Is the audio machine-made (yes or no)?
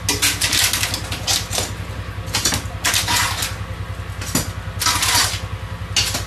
no